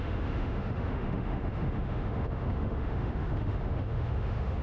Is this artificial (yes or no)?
yes